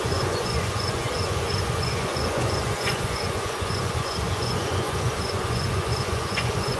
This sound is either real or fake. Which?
fake